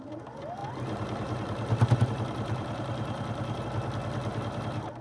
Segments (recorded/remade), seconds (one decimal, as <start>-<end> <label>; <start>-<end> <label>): 0.0-0.6 recorded; 0.6-3.6 remade; 3.6-4.3 recorded; 4.3-5.0 remade